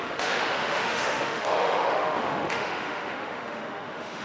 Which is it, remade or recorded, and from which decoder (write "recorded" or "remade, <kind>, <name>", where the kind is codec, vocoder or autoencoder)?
remade, autoencoder, DAC-VAE